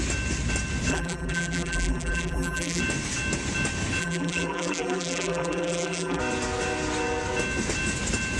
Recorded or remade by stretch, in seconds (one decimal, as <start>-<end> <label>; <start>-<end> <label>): 0.0-0.9 recorded; 0.9-2.8 remade; 2.8-4.0 recorded; 4.0-6.2 remade; 6.2-8.4 recorded